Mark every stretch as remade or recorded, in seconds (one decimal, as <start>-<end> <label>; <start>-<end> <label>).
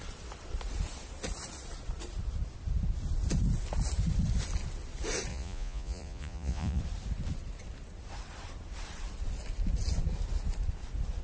0.0-5.3 recorded; 5.3-6.8 remade; 6.8-11.2 recorded